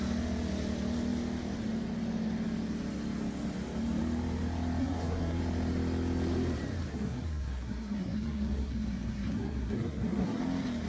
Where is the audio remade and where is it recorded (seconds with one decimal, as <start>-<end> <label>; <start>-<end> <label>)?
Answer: 0.0-4.8 recorded; 4.8-5.4 remade; 5.4-6.9 recorded; 6.9-10.4 remade; 10.4-10.9 recorded